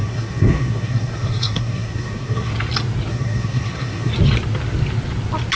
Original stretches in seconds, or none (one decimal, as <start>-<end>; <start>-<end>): 2.5-3.1; 4.1-5.5